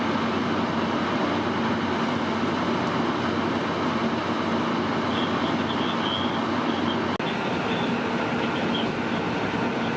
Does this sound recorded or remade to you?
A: recorded